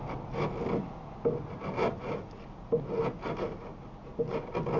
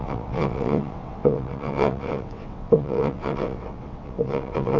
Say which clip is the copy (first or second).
second